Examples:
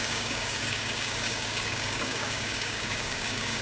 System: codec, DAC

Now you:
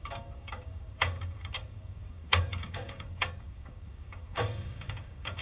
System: codec, DAC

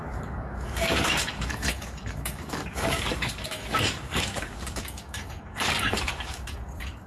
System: codec, DAC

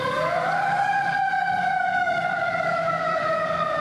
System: codec, DAC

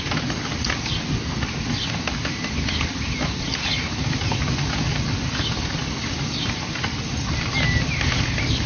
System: none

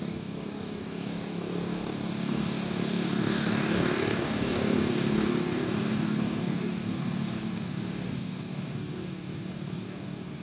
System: codec, DAC